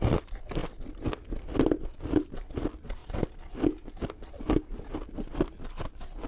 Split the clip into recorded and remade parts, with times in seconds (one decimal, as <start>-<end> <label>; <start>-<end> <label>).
0.0-0.6 recorded; 0.6-1.7 remade; 1.7-6.3 recorded